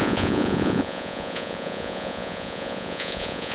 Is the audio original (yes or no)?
no